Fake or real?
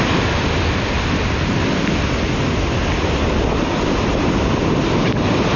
real